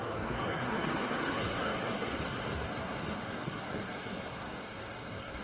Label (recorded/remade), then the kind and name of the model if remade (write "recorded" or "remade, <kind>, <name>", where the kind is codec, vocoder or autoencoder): remade, codec, SNAC